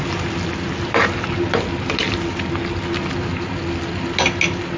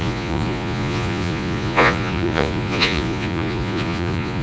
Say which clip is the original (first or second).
first